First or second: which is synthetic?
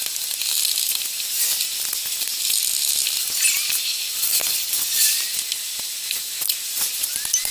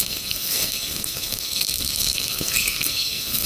second